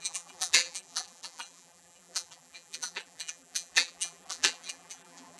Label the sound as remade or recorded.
remade